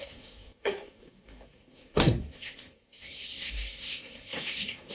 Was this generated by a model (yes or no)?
yes